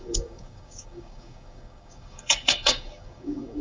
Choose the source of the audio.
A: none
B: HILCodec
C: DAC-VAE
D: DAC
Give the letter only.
D